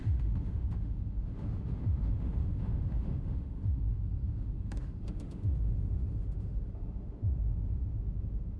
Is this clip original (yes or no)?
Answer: no